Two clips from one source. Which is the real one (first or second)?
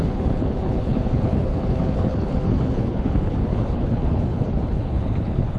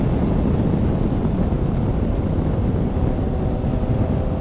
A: second